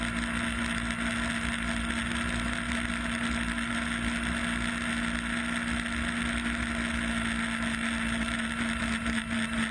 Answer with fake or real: real